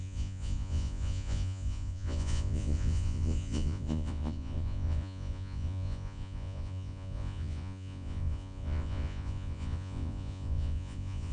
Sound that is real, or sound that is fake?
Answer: fake